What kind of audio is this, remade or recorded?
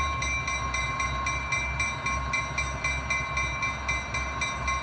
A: recorded